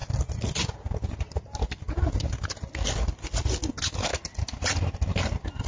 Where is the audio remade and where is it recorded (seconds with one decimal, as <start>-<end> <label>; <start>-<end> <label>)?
0.0-5.7 recorded